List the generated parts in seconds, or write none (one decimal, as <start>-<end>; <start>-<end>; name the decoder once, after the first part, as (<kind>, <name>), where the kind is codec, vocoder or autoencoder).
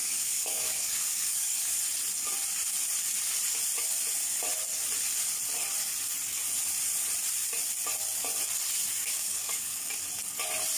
0.0-1.8 (codec, DAC); 9.0-9.9